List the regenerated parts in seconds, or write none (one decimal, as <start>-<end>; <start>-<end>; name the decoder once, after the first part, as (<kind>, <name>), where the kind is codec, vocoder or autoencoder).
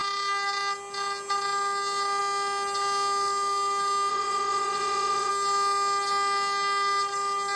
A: 4.1-5.3 (vocoder, Vocos)